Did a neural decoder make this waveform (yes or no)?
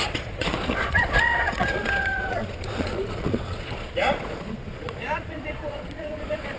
yes